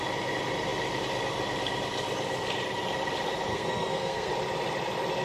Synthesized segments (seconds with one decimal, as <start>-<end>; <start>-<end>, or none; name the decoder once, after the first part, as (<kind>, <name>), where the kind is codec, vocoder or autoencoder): 3.5-4.3 (codec, SNAC)